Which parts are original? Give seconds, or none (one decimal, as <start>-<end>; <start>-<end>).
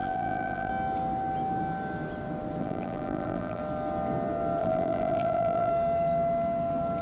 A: 0.7-2.6; 3.6-4.6; 5.7-7.0